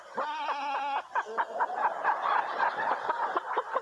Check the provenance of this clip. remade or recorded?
recorded